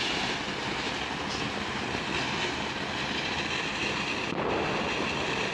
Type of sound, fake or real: real